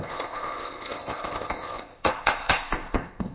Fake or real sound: fake